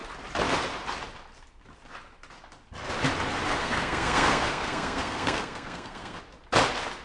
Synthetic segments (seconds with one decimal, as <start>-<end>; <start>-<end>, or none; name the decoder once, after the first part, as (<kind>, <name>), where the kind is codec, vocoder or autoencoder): 3.6-6.2 (codec, SNAC)